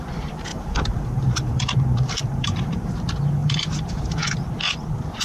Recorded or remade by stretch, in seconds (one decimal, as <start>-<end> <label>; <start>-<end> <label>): 0.0-0.5 recorded; 0.5-2.9 remade; 2.9-3.4 recorded; 3.4-4.3 remade; 4.3-5.2 recorded